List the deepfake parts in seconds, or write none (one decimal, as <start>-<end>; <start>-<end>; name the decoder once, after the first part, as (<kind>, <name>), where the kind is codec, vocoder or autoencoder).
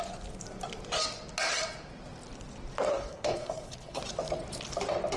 2.9-4.0 (codec, HILCodec)